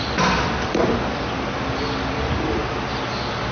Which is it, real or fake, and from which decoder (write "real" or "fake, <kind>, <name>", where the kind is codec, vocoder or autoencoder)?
real